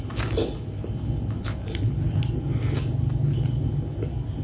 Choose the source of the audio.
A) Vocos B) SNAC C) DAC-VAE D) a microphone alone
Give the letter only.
D